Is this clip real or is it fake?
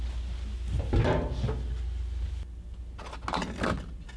real